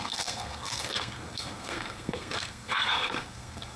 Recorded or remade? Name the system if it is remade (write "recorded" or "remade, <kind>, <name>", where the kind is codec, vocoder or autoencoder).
remade, codec, SNAC